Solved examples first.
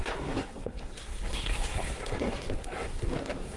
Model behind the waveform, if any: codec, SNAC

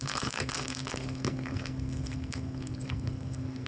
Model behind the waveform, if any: codec, SNAC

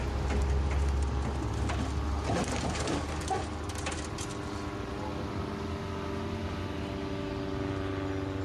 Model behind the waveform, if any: none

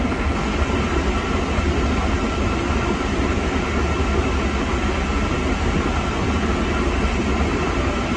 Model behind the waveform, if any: none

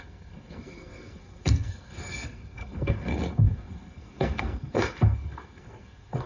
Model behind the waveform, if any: codec, SNAC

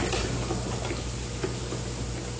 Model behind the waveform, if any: none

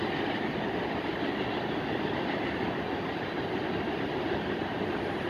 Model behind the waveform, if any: none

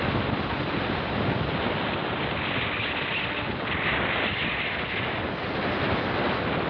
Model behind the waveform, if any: none